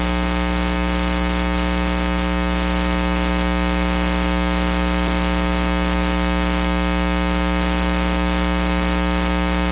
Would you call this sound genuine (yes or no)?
yes